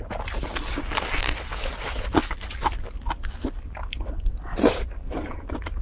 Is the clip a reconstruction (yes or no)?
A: no